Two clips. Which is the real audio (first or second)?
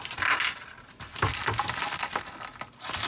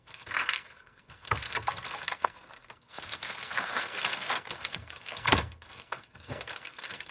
first